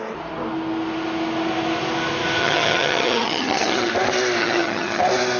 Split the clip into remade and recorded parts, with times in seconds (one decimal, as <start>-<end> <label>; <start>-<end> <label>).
0.0-2.4 recorded; 2.4-3.9 remade; 3.9-4.4 recorded; 4.4-5.0 remade; 5.0-5.4 recorded